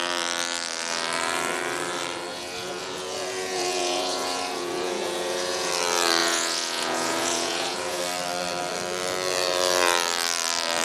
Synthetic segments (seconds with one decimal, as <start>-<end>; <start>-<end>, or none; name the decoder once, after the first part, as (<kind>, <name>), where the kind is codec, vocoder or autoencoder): 2.3-5.7 (vocoder, Vocos); 6.2-8.0